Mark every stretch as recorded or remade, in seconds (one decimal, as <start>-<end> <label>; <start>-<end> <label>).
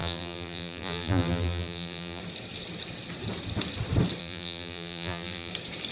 0.0-2.2 remade; 2.2-4.2 recorded; 4.2-5.5 remade; 5.5-5.9 recorded